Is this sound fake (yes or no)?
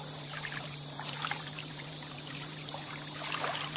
yes